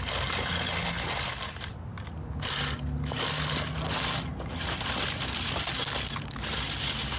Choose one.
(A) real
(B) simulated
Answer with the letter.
A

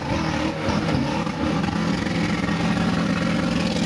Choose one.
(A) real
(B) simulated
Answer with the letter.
A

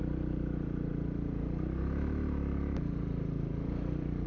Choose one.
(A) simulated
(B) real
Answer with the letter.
A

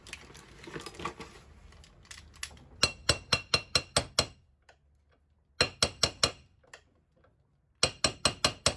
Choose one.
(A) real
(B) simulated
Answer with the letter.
A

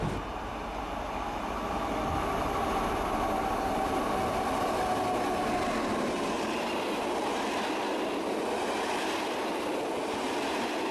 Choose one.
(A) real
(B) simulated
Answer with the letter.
A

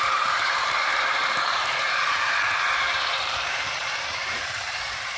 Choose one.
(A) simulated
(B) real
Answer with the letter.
A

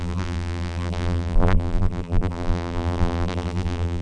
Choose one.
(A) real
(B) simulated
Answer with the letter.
B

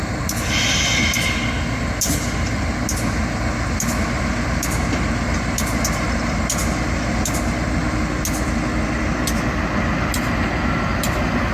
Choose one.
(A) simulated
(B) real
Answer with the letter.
B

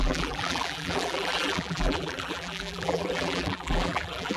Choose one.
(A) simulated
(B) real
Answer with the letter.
A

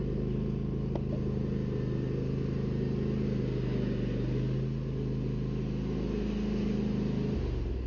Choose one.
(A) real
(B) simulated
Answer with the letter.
A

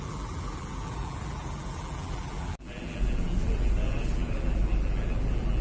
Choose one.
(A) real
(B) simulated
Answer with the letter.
B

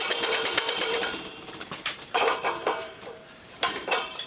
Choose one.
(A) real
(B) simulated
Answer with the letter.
B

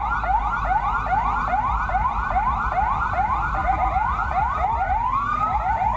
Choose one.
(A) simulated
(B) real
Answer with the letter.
B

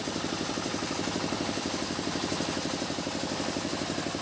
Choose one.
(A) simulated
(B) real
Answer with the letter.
A